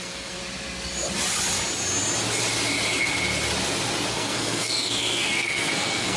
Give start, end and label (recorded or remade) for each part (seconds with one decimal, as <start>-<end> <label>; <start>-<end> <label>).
0.0-0.4 remade; 0.4-4.1 recorded; 4.1-6.2 remade